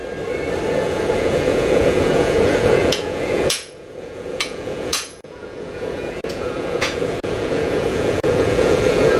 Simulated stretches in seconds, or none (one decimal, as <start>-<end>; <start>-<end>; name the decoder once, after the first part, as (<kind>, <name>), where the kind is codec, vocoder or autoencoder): 0.7-9.2 (vocoder, Vocos)